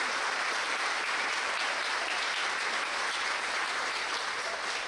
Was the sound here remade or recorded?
remade